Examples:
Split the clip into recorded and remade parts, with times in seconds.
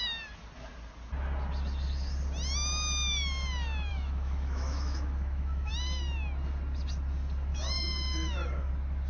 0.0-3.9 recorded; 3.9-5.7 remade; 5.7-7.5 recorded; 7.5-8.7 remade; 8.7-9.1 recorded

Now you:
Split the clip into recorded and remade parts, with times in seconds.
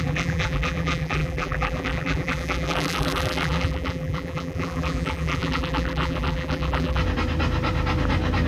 0.0-7.0 remade; 7.0-8.5 recorded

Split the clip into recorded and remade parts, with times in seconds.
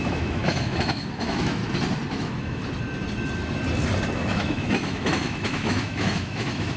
0.0-1.6 remade; 1.6-2.1 recorded; 2.1-2.6 remade; 2.6-4.1 recorded; 4.1-6.8 remade